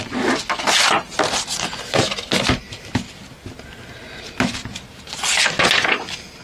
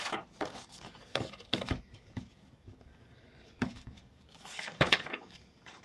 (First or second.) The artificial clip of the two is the second